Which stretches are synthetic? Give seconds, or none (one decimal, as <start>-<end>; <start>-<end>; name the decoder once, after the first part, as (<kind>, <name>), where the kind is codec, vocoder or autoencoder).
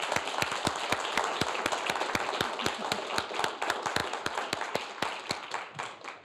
none